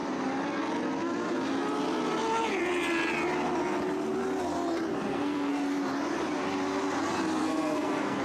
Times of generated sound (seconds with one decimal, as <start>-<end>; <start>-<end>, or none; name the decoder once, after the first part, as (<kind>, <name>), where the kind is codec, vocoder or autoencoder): 4.9-5.5 (codec, SNAC); 7.4-8.2

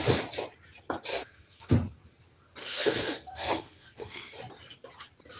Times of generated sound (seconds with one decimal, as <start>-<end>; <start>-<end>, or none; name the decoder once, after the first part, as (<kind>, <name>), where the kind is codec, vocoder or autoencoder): 1.1-1.7 (codec, SNAC); 2.6-4.3